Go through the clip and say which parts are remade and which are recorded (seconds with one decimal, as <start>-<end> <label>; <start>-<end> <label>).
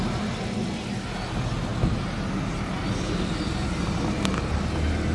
0.0-5.1 recorded